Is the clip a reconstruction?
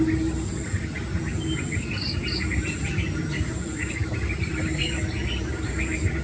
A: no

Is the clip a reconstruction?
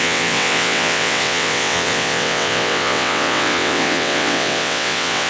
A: yes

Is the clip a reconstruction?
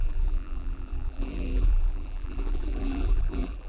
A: yes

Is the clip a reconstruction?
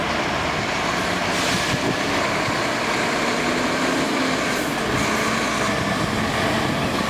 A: no